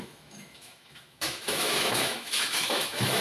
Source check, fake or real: fake